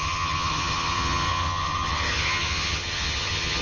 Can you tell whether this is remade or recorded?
remade